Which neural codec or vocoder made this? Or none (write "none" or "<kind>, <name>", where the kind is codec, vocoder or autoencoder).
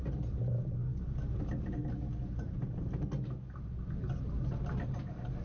none